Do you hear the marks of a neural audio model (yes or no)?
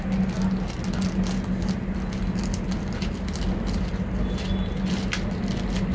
no